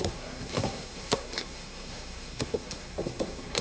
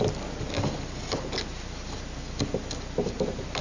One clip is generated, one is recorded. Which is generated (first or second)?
first